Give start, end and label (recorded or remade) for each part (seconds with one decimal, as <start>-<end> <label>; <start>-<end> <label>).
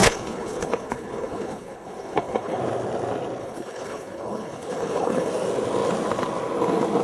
0.0-2.6 remade; 2.6-3.4 recorded; 3.4-5.3 remade; 5.3-7.0 recorded